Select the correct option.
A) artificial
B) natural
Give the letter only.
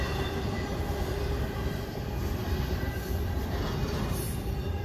B